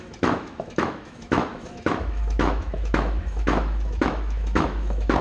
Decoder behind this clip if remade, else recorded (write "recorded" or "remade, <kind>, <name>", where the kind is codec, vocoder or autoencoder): remade, autoencoder, DAC-VAE